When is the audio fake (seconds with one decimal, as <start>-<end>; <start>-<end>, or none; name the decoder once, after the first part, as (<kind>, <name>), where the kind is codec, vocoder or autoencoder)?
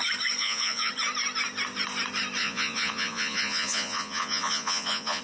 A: 0.4-0.9 (vocoder, Vocos); 2.4-5.2